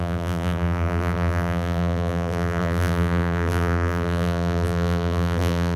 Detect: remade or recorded remade